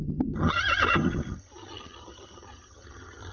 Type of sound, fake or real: fake